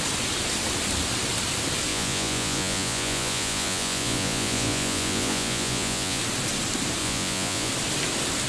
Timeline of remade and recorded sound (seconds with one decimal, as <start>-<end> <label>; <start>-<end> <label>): 0.0-1.9 recorded; 1.9-6.2 remade; 6.2-7.0 recorded; 7.0-7.7 remade; 7.7-8.5 recorded